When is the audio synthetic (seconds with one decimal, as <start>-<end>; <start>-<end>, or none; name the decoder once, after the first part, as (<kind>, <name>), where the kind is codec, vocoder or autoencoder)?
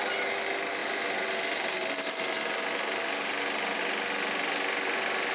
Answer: none